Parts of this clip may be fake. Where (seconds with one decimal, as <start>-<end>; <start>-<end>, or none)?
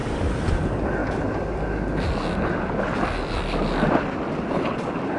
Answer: none